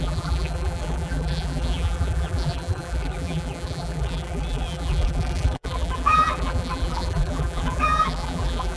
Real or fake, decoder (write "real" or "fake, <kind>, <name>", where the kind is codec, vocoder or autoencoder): fake, vocoder, BigVGAN v2